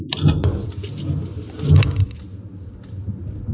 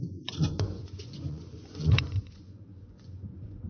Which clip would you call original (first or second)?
first